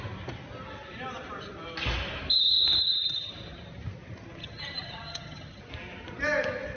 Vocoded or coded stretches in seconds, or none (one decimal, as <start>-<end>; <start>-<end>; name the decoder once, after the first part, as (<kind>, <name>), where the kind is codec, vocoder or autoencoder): 2.8-3.3 (vocoder, HiFi-GAN); 4.4-5.6